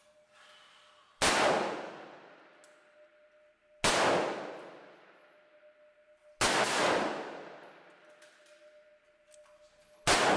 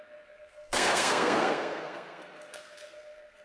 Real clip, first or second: first